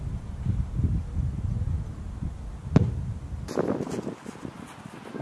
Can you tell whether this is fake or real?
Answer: real